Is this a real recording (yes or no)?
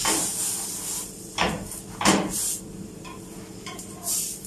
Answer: no